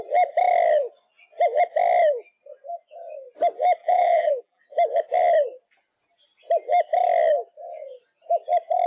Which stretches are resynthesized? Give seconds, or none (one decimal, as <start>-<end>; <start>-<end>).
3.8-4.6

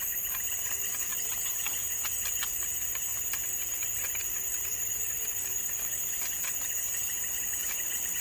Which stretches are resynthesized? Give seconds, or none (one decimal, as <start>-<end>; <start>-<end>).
none

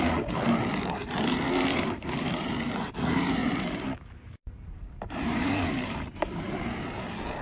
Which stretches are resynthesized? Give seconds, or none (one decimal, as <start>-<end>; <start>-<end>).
1.7-2.9; 3.4-6.0

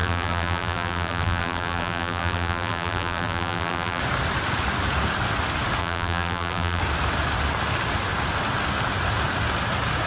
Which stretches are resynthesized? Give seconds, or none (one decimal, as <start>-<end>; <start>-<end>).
0.0-4.0; 5.8-6.8

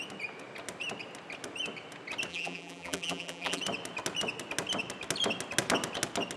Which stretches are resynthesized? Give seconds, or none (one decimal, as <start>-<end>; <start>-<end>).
2.3-3.6